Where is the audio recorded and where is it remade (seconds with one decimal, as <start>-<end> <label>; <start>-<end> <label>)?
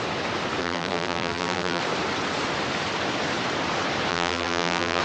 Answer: 0.0-0.6 recorded; 0.6-1.8 remade; 1.8-4.1 recorded; 4.1-5.0 remade